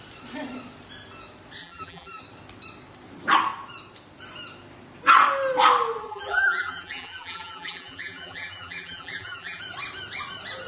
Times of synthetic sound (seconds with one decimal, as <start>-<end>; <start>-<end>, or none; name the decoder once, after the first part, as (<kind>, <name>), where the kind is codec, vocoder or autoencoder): 1.6-2.2 (vocoder, BigVGAN v2); 6.0-9.6